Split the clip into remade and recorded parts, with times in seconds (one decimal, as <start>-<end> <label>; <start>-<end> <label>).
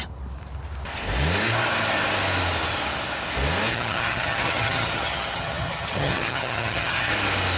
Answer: 0.0-3.7 recorded; 3.7-7.1 remade; 7.1-7.6 recorded